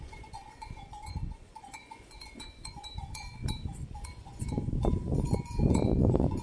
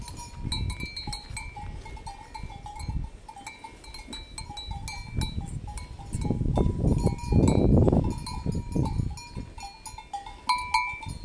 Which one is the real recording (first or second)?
second